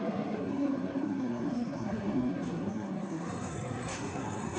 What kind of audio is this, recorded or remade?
remade